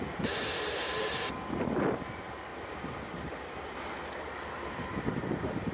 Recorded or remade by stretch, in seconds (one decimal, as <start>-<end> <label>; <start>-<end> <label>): 0.0-5.7 recorded